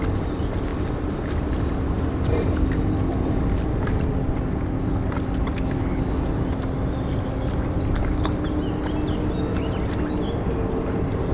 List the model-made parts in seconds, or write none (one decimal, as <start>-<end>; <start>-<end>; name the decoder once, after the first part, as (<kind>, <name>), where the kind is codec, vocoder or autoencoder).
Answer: none